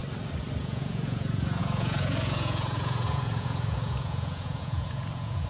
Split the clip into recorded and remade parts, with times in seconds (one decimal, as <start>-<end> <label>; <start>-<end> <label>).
0.0-0.6 recorded; 0.6-5.5 remade